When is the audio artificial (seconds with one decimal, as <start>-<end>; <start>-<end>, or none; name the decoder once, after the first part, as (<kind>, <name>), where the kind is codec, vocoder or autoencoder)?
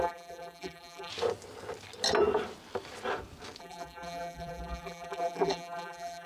0.0-1.1 (vocoder, BigVGAN v2); 3.6-6.3